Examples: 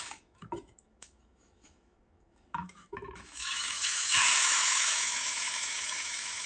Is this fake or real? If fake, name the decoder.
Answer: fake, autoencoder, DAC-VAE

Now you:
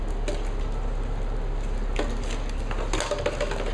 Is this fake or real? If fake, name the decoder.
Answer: real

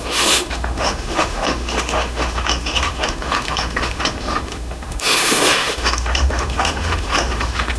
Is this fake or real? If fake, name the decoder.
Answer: fake, autoencoder, DAC-VAE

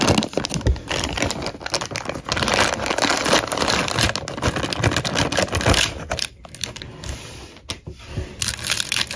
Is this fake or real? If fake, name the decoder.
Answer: real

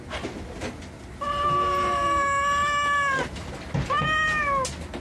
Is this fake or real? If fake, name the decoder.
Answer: real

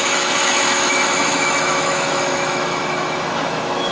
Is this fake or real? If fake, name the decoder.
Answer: fake, autoencoder, DAC-VAE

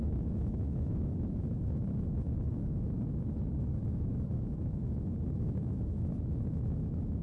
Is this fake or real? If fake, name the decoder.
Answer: fake, autoencoder, DAC-VAE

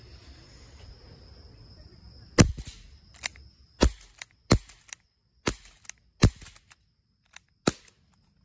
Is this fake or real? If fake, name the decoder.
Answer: real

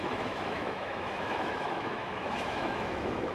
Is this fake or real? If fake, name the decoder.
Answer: fake, autoencoder, DAC-VAE